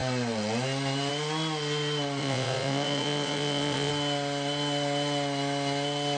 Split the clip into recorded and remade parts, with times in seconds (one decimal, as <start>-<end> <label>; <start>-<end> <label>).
0.0-2.2 recorded; 2.2-3.9 remade; 3.9-6.2 recorded